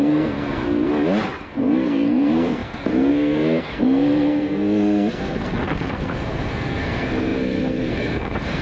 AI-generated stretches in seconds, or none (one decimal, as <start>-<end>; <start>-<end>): 0.0-0.9; 1.4-8.6

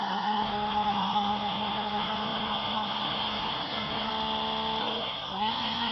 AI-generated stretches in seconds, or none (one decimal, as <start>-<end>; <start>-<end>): 0.0-4.1; 4.8-5.9

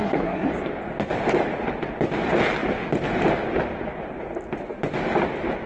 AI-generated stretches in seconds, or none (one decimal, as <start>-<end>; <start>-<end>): 0.0-0.5